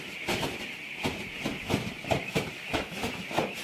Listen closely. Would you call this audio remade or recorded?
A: recorded